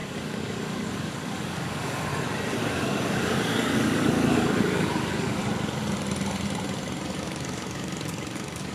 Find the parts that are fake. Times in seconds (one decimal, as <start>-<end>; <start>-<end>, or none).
0.0-2.1; 2.7-5.4; 7.2-8.7